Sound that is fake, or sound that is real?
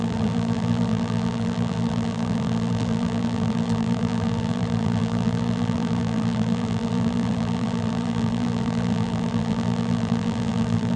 fake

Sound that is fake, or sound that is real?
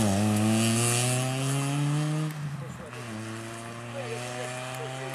real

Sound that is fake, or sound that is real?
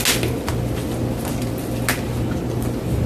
real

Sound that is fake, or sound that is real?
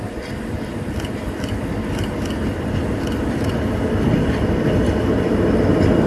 real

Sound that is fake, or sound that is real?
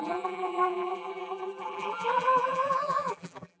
fake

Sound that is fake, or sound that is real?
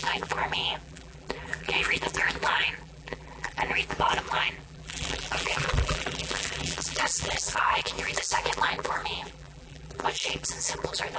fake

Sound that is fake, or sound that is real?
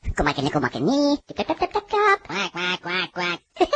real